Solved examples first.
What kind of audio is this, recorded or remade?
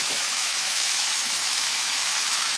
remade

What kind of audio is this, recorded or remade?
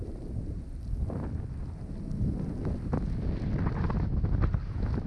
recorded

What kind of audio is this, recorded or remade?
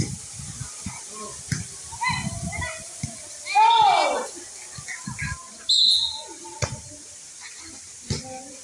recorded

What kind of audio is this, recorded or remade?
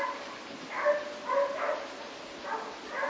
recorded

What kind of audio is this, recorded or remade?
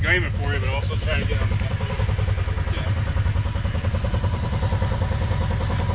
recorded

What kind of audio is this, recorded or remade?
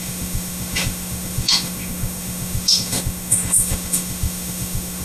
remade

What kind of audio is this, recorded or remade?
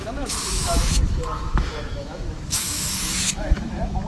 remade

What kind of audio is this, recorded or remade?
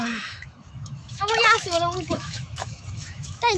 remade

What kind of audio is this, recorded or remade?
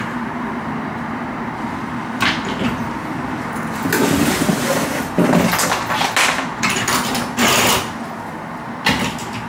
recorded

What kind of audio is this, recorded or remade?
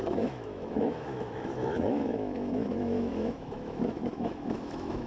remade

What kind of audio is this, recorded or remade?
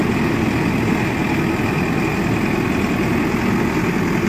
recorded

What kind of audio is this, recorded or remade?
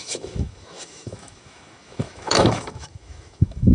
remade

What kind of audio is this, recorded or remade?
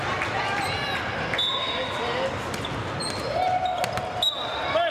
recorded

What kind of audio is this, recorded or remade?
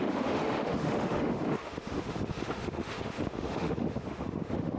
remade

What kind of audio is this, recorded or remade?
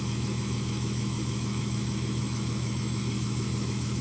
remade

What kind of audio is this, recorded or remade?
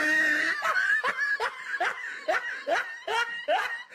recorded